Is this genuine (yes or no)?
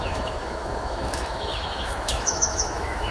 no